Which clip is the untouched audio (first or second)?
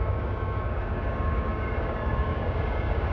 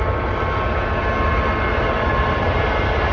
second